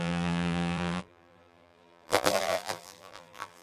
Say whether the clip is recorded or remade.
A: remade